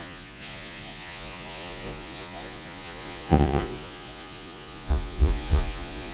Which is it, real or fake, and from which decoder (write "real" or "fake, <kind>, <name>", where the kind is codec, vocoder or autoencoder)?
fake, vocoder, Vocos